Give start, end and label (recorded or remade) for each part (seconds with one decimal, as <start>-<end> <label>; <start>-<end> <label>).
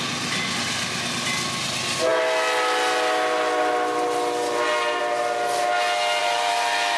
0.0-6.2 recorded; 6.2-7.0 remade